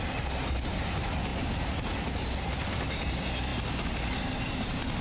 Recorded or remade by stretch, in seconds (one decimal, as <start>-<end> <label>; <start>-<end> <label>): 0.0-5.0 recorded